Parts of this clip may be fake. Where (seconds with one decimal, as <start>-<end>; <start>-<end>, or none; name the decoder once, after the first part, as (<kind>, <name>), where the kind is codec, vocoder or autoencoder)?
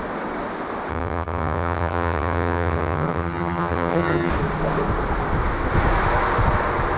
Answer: 0.9-4.3 (vocoder, HiFi-GAN)